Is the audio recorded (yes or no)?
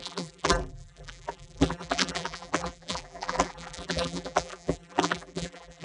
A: no